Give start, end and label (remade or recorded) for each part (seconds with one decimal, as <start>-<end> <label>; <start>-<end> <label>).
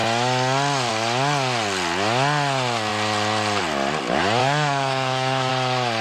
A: 0.0-4.4 recorded; 4.4-5.5 remade; 5.5-6.0 recorded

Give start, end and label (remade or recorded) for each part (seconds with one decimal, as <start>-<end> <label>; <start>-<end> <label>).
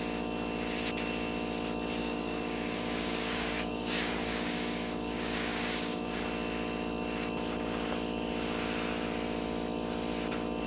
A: 0.0-2.0 recorded; 2.0-6.2 remade; 6.2-10.7 recorded